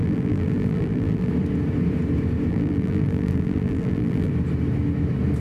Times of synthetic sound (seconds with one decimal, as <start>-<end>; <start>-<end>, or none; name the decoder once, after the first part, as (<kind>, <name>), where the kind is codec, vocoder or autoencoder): 0.0-1.3 (vocoder, BigVGAN v2); 2.5-4.3